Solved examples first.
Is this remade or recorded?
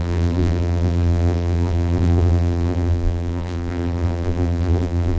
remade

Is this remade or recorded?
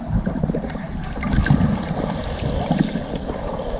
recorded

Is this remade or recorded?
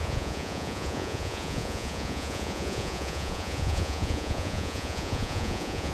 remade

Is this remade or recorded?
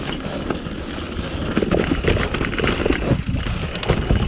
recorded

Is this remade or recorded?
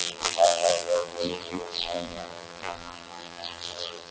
remade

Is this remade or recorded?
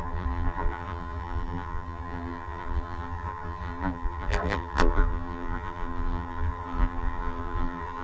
remade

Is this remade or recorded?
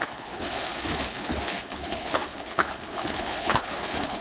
remade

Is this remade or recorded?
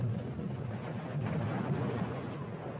remade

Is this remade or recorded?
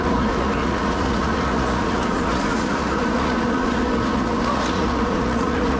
remade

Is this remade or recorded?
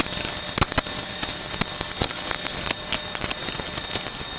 recorded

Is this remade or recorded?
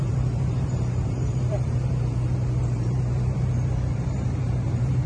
remade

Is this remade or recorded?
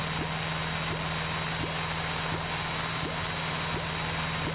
recorded